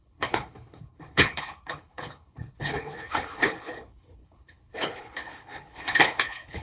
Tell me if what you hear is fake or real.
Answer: fake